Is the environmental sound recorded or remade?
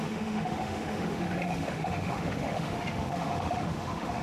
remade